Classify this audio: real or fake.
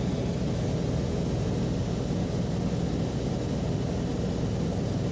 real